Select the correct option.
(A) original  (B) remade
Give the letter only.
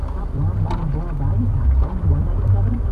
B